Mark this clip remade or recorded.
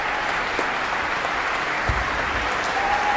recorded